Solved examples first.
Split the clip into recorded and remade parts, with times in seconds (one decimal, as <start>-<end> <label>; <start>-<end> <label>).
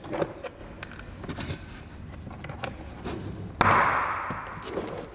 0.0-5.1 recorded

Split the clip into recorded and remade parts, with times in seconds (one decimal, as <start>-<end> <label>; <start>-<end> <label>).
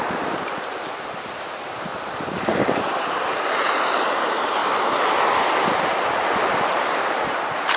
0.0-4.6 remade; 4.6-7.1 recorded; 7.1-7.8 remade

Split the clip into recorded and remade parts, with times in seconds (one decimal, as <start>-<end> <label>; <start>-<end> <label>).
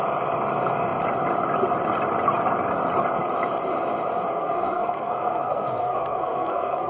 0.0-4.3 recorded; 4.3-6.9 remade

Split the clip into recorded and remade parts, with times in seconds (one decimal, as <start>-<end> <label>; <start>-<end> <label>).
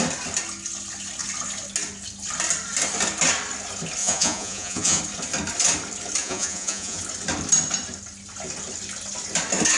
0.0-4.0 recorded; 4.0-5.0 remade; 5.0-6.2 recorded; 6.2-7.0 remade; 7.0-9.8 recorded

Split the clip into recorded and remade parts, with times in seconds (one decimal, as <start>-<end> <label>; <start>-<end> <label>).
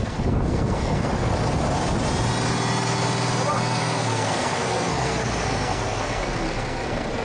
0.0-1.1 remade; 1.1-3.5 recorded; 3.5-7.2 remade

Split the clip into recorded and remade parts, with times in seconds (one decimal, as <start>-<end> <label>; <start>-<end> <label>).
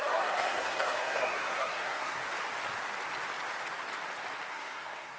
0.0-2.2 remade; 2.2-4.5 recorded; 4.5-5.2 remade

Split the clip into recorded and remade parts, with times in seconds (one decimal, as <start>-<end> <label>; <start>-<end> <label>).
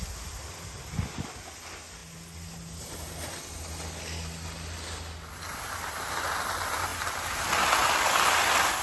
0.0-8.8 recorded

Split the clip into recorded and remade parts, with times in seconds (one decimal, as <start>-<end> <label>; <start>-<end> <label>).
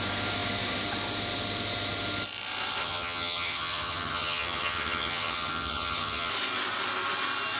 0.0-2.8 recorded; 2.8-6.3 remade; 6.3-7.6 recorded